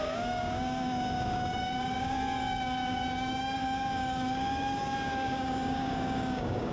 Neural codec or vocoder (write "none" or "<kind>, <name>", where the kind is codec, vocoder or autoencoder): codec, DAC